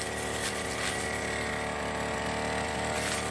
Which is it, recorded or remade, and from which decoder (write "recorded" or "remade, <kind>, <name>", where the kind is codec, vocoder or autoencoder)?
recorded